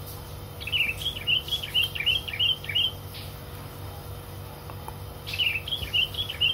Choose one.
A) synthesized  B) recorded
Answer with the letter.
B